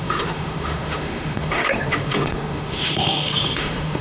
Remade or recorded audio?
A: remade